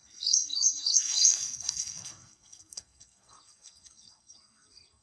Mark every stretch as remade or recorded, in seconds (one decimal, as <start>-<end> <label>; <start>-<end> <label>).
0.0-5.0 remade